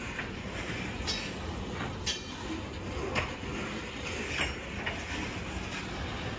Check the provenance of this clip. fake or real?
real